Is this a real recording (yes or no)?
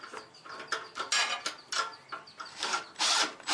yes